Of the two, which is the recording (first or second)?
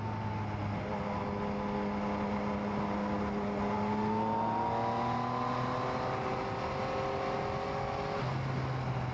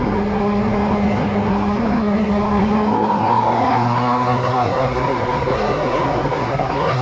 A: first